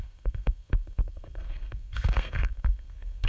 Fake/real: fake